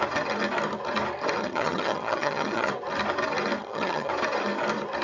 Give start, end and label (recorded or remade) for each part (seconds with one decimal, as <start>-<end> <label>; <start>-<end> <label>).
0.0-1.4 recorded; 1.4-2.7 remade; 2.7-3.6 recorded; 3.6-4.1 remade; 4.1-5.0 recorded